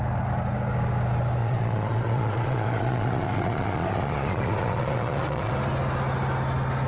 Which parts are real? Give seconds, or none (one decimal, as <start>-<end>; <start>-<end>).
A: 0.0-1.4; 5.5-6.9